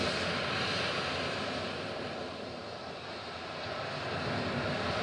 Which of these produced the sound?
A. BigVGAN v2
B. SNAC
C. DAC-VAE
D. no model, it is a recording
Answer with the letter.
A